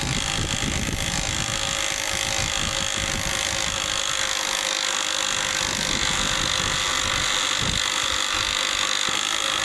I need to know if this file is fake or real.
real